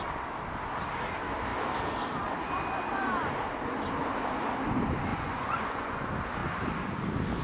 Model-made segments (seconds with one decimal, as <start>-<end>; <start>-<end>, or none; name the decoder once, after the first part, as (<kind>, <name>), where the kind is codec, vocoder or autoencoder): 5.1-6.0 (vocoder, Vocos)